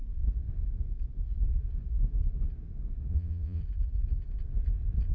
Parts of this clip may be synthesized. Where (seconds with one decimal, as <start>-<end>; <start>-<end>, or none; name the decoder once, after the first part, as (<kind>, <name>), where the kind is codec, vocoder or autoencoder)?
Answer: 3.1-3.6 (vocoder, Vocos)